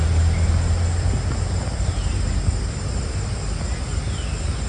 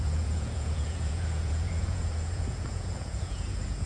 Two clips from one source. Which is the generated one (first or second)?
second